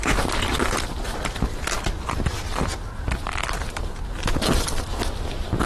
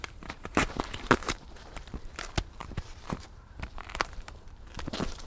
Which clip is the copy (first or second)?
second